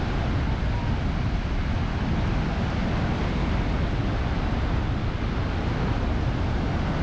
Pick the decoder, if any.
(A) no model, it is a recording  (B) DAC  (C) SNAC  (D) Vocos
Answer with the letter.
A